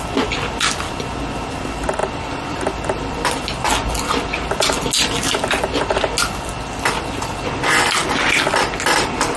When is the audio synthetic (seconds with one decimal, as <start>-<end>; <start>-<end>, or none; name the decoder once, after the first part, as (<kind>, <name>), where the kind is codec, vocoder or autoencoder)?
none